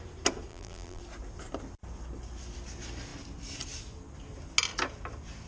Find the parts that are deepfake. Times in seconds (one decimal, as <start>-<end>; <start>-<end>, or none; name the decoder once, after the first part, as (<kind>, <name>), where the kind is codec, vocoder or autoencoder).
0.5-1.0 (vocoder, BigVGAN v2)